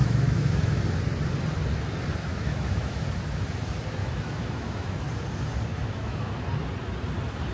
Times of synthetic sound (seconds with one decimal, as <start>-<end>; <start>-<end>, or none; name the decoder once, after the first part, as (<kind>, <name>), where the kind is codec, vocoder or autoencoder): 0.0-0.8 (autoencoder, DAC-VAE); 2.2-3.0; 4.0-5.0; 5.7-6.3